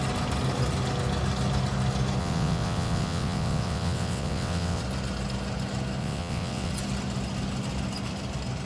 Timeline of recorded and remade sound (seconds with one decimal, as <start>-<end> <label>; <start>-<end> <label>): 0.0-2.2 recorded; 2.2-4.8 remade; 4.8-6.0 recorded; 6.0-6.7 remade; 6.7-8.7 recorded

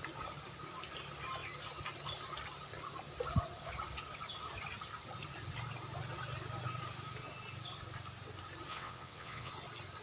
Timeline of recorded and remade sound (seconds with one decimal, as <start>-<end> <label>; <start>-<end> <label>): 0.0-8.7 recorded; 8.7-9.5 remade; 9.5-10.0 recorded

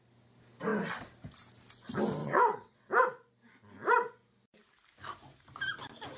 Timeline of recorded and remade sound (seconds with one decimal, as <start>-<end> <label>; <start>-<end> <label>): 0.0-2.2 recorded; 2.2-2.9 remade; 2.9-6.2 recorded

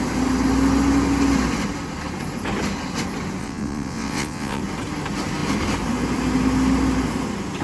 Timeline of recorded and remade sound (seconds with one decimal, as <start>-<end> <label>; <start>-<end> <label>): 0.0-3.4 recorded; 3.4-4.6 remade; 4.6-7.6 recorded

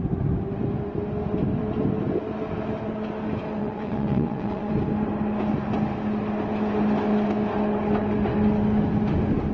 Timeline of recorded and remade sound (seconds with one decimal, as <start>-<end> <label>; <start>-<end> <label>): 0.0-3.6 recorded; 3.6-4.7 remade; 4.7-9.5 recorded

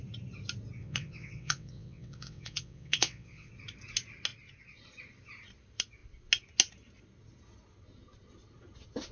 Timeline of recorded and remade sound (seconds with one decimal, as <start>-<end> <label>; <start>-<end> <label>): 0.0-0.8 recorded; 0.8-3.5 remade; 3.5-9.1 recorded